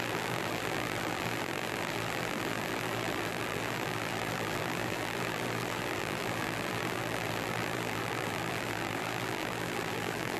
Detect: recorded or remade remade